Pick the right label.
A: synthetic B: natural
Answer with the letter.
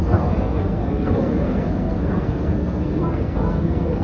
A